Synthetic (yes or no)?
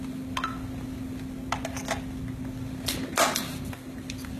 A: no